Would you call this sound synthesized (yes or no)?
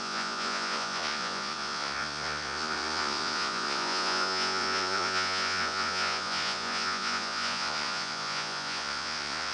yes